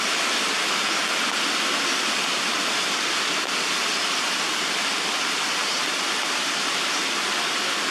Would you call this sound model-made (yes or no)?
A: no